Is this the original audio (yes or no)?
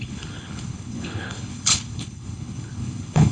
no